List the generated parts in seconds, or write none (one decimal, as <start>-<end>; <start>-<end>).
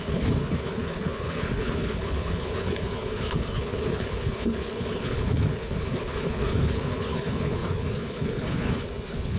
0.0-9.4